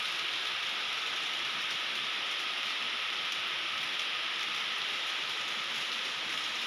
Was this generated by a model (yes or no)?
no